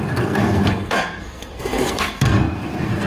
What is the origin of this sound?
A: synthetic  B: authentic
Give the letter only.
A